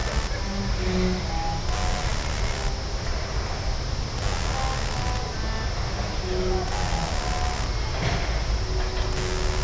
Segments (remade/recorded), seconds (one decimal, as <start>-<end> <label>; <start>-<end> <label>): 0.0-9.6 recorded